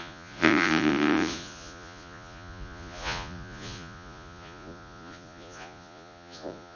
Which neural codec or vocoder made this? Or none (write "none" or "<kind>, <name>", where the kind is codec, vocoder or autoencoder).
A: vocoder, Vocos